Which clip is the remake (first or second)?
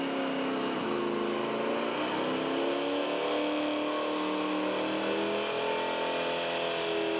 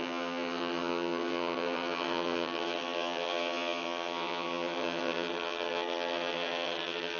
second